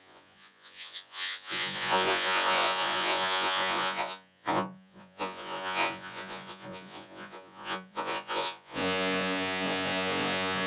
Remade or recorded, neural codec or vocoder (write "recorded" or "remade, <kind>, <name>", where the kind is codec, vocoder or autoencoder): remade, vocoder, Vocos